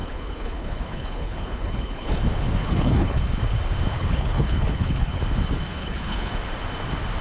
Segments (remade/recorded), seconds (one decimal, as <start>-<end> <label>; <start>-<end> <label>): 0.0-2.2 remade; 2.2-2.6 recorded; 2.6-3.2 remade; 3.2-3.9 recorded; 3.9-5.2 remade; 5.2-5.8 recorded; 5.8-6.3 remade; 6.3-7.2 recorded

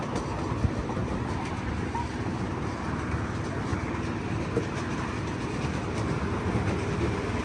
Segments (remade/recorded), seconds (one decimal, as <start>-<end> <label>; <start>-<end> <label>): 0.0-7.4 recorded

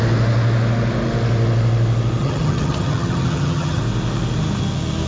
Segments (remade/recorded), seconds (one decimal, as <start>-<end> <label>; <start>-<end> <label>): 0.0-2.2 recorded; 2.2-3.8 remade; 3.8-5.1 recorded

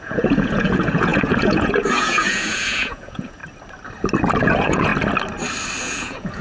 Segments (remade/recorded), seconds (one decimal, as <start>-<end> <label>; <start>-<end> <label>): 0.0-3.4 remade; 3.4-4.4 recorded; 4.4-4.9 remade; 4.9-5.8 recorded; 5.8-6.4 remade

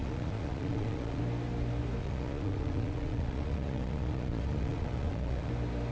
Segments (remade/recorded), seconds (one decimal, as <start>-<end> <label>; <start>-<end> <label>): 0.0-1.2 remade; 1.2-2.0 recorded; 2.0-5.5 remade; 5.5-5.9 recorded